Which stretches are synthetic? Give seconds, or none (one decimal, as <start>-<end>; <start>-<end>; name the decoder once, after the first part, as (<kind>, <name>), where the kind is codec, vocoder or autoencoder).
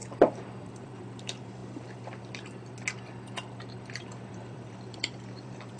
0.6-1.6 (vocoder, BigVGAN v2); 4.0-5.8